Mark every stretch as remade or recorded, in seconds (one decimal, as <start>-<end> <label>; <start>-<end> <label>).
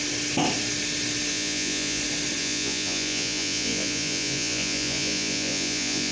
0.0-1.3 recorded; 1.3-2.0 remade; 2.0-2.4 recorded; 2.4-6.1 remade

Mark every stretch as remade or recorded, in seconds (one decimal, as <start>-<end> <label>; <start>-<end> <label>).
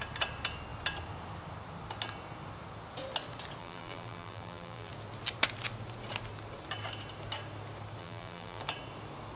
0.0-3.6 recorded; 3.6-4.9 remade; 4.9-8.0 recorded; 8.0-8.6 remade; 8.6-9.4 recorded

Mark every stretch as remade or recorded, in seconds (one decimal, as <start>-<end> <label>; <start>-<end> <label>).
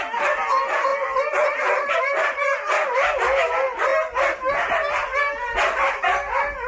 0.0-0.9 recorded; 0.9-2.0 remade; 2.0-6.7 recorded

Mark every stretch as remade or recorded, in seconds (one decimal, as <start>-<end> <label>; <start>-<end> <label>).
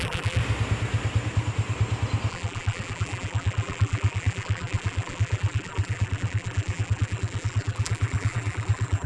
0.0-0.4 remade; 0.4-2.3 recorded; 2.3-9.1 remade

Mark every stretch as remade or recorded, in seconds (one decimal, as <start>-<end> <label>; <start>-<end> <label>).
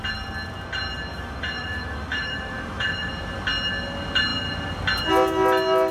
0.0-1.1 recorded; 1.1-3.1 remade; 3.1-5.9 recorded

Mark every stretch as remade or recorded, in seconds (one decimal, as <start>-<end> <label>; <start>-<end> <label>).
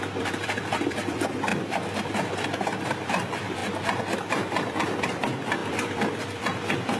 0.0-3.6 remade; 3.6-4.3 recorded; 4.3-7.0 remade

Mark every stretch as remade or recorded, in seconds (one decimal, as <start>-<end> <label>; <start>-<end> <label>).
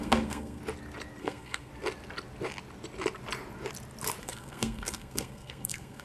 0.0-0.6 remade; 0.6-1.2 recorded; 1.2-1.7 remade; 1.7-4.2 recorded; 4.2-6.0 remade